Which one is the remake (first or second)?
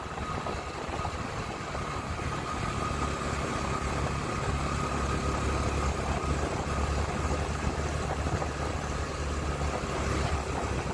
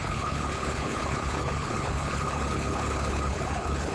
second